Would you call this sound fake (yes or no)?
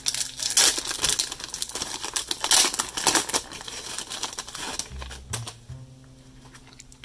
no